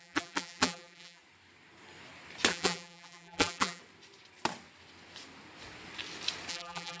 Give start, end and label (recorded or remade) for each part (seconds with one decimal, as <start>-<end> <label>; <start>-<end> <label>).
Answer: 0.0-1.2 remade; 1.2-2.5 recorded; 2.5-3.8 remade; 3.8-6.5 recorded; 6.5-7.0 remade